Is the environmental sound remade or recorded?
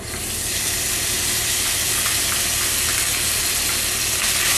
recorded